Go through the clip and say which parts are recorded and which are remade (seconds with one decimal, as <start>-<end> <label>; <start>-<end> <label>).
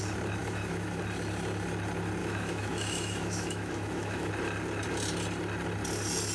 0.0-0.4 recorded; 0.4-1.0 remade; 1.0-2.2 recorded; 2.2-4.3 remade; 4.3-6.3 recorded